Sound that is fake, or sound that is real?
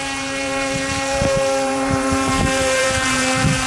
fake